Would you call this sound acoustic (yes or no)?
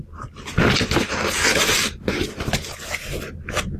yes